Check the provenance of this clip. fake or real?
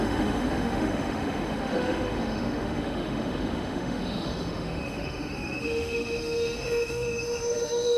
fake